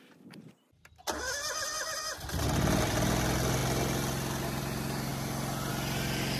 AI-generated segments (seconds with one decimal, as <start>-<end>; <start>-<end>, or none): none